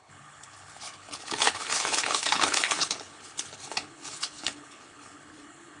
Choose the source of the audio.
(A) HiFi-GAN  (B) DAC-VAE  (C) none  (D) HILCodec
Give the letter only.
D